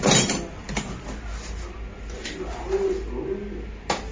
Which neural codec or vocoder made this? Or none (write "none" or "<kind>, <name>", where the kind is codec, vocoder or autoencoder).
none